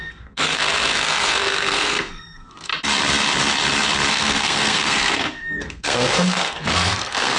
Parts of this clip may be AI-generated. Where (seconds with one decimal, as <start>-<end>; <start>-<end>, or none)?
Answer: 0.0-2.7; 4.1-7.4